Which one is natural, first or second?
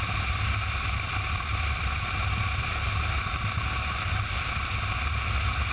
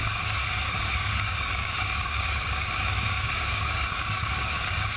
first